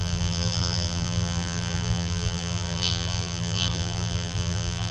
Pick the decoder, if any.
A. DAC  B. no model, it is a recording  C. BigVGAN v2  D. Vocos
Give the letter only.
C